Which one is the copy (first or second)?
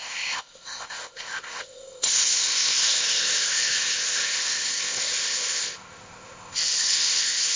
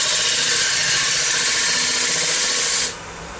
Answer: first